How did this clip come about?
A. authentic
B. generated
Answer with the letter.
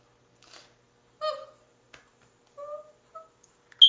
A